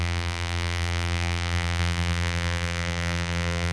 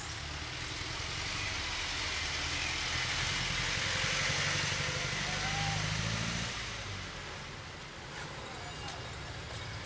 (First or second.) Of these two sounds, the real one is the second